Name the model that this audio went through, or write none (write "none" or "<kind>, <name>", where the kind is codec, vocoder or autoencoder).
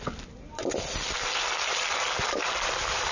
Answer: none